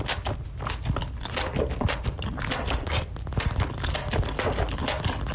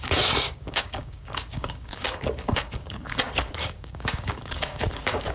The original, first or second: first